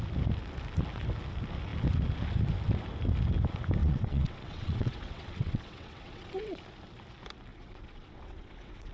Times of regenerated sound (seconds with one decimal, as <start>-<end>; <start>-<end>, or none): 3.8-6.6; 7.5-8.9